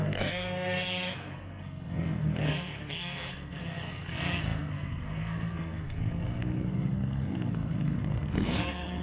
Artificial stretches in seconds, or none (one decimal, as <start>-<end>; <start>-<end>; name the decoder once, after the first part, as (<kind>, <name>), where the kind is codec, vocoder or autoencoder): 0.0-9.0 (codec, SNAC)